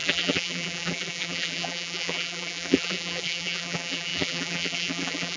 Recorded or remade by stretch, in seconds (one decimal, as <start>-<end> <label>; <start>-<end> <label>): 0.0-5.4 remade